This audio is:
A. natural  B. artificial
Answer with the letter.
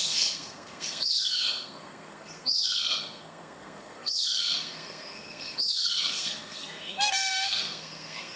B